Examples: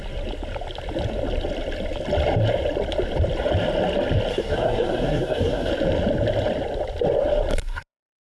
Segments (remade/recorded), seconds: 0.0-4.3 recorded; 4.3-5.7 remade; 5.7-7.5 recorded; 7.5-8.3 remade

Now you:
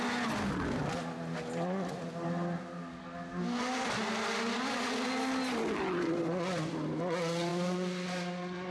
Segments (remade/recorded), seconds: 0.0-8.7 recorded